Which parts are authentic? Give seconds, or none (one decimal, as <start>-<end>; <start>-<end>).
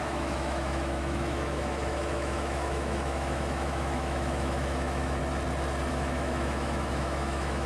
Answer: 5.2-5.9